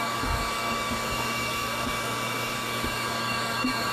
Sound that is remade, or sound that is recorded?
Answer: remade